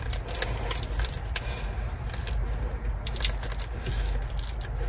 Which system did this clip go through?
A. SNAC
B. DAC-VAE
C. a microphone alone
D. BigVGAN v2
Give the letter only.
C